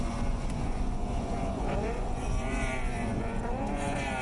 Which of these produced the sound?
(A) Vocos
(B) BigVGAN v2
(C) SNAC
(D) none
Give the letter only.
A